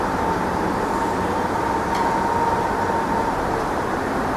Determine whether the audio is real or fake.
real